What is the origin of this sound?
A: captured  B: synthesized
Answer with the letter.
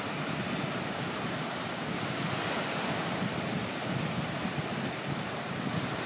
A